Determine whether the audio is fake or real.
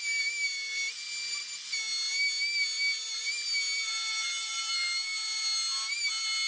real